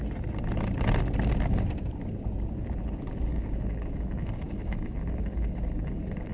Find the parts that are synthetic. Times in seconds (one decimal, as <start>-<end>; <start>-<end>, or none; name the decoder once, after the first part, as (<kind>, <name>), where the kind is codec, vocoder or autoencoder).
3.3-6.3 (codec, DAC)